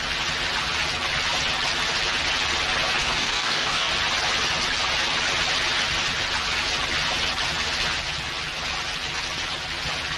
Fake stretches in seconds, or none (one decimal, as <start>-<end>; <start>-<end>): 3.0-3.9